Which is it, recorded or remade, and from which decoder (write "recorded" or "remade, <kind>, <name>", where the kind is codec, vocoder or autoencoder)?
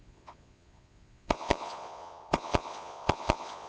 remade, vocoder, Vocos